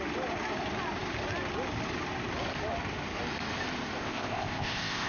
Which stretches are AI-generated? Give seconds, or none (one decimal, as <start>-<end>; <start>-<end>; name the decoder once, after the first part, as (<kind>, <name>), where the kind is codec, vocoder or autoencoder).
4.0-5.1 (codec, ZipCodec)